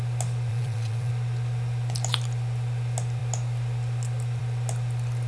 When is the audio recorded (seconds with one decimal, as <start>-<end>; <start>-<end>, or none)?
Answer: 0.0-0.5; 1.1-5.3